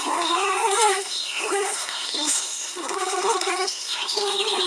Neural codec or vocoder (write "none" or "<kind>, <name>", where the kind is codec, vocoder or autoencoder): codec, SNAC